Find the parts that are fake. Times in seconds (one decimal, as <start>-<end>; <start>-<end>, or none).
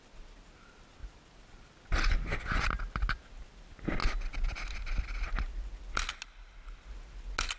none